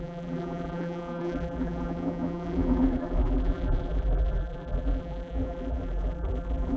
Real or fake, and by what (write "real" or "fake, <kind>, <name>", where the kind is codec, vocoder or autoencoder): fake, vocoder, BigVGAN v2